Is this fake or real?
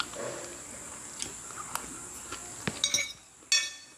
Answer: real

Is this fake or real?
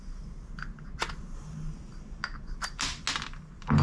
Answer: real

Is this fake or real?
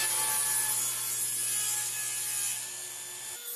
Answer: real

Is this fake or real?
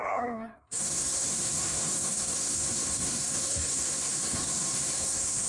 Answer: fake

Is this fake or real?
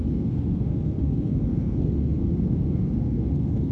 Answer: fake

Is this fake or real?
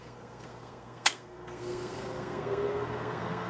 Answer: fake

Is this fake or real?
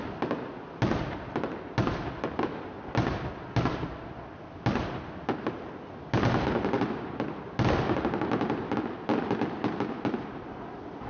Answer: real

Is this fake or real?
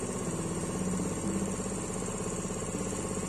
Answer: real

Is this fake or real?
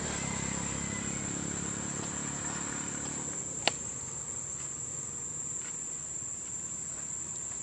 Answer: real